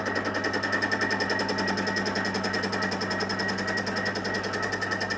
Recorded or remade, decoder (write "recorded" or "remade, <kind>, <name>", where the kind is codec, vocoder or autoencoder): recorded